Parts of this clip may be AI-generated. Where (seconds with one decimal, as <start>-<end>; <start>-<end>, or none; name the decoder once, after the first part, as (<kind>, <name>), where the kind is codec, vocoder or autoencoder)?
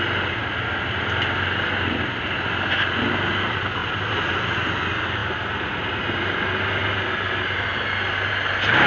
none